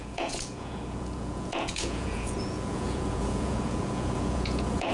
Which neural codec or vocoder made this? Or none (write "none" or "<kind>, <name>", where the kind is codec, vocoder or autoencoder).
vocoder, Vocos